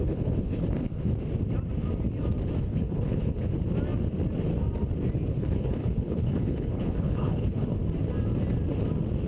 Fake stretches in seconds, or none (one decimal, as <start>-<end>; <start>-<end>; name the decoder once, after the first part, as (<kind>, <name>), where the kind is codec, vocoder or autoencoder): 0.0-1.1 (codec, HILCodec); 2.6-3.5; 5.3-7.8